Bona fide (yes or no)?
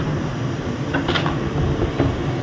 yes